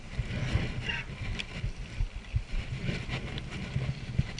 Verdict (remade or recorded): recorded